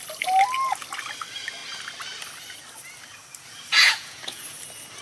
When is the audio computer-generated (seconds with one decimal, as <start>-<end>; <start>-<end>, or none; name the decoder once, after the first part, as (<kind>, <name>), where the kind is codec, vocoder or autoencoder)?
3.7-4.4 (vocoder, Vocos)